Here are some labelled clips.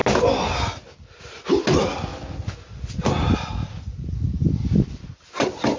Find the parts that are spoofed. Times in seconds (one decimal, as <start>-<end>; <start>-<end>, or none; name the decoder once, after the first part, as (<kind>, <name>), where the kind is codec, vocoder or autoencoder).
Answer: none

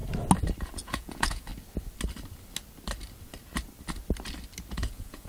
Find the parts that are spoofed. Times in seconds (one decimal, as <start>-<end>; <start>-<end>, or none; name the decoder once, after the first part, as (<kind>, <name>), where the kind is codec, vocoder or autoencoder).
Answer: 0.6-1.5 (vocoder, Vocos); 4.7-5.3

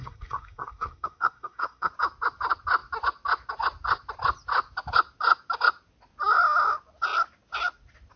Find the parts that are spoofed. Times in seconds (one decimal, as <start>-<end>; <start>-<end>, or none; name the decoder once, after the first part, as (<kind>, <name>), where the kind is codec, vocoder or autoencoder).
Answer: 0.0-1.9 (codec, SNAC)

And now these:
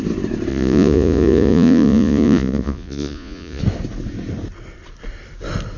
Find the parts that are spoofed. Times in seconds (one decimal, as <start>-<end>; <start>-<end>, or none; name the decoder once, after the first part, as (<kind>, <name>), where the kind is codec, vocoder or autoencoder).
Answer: 0.5-3.6 (vocoder, Vocos)

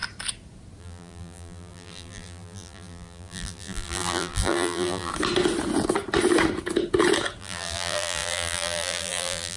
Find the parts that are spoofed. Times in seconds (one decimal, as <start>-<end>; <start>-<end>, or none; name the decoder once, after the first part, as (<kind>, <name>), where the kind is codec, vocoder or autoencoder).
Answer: 0.8-5.1 (vocoder, BigVGAN v2); 7.4-9.6

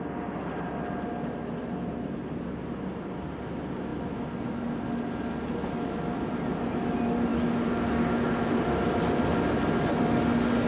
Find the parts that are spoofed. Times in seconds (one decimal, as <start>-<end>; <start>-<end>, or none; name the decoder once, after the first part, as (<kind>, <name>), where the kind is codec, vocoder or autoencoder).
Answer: none